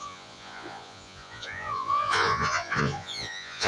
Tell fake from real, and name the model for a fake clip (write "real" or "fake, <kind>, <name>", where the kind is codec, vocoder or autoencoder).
fake, vocoder, Vocos